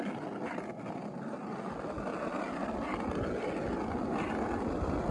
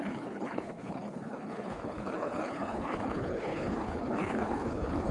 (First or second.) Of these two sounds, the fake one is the second